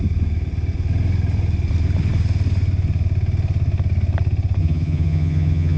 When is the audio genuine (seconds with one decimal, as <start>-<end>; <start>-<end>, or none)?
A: 0.0-4.6